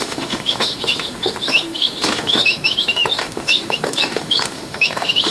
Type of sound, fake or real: fake